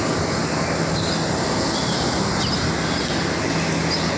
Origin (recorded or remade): recorded